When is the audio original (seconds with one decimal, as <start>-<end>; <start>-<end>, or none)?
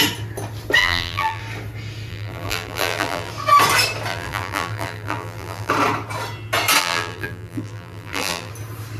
0.0-0.8; 1.4-2.1; 3.3-4.1; 5.7-6.8; 8.5-9.0